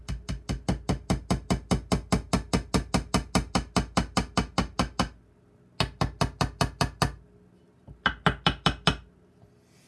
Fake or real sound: real